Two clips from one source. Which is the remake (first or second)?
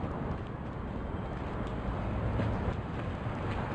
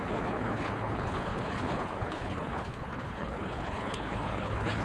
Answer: second